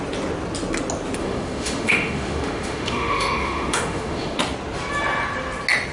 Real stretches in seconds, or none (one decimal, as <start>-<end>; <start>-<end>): 0.0-1.2; 4.4-5.9